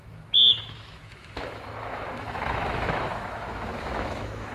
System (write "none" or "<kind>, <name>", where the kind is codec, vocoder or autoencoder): autoencoder, DAC-VAE